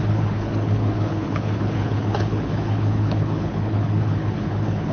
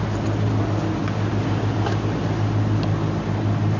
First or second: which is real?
second